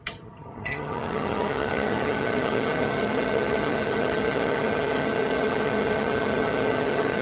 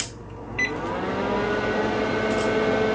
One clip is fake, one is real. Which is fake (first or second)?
first